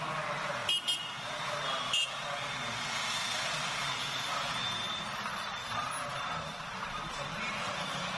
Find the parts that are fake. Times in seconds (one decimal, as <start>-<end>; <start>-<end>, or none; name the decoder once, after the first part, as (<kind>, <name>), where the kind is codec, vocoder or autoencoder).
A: 5.6-8.2 (vocoder, BigVGAN v2)